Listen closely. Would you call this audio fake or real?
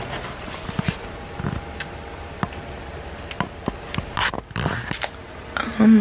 real